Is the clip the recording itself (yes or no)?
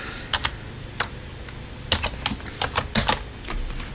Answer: yes